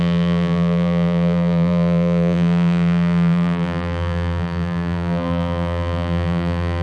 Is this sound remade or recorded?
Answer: remade